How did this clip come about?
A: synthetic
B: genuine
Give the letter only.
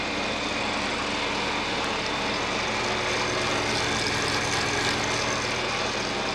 B